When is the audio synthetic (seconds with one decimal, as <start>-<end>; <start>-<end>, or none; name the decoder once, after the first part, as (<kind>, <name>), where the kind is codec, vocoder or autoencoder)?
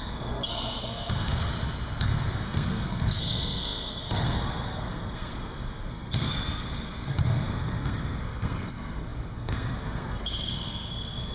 0.0-1.4 (codec, SNAC); 2.0-11.3